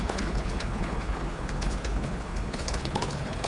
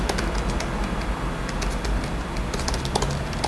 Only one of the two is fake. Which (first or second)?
first